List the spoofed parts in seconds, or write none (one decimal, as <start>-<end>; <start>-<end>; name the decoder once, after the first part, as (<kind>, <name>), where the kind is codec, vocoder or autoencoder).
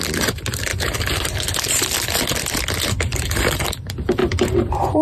4.2-5.0 (vocoder, BigVGAN v2)